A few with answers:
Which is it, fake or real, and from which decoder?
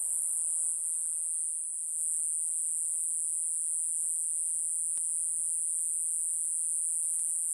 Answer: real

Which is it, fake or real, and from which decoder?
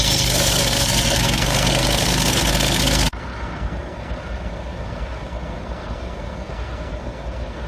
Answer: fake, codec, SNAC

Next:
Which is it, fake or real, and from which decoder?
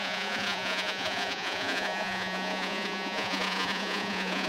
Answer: fake, vocoder, Vocos